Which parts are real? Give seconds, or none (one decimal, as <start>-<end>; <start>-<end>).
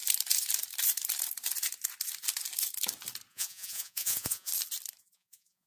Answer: 0.0-3.3; 4.5-5.0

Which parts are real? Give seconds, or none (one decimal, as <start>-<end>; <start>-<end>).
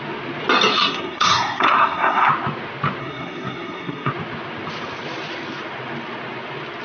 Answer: 0.0-0.7; 2.3-3.0; 4.1-6.8